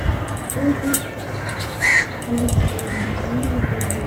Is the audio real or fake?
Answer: fake